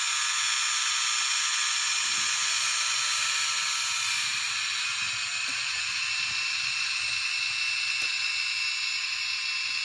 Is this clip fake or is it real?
real